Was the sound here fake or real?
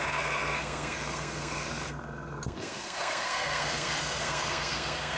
fake